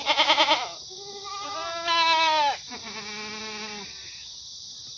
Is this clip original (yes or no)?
yes